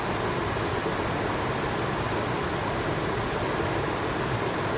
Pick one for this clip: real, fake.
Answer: real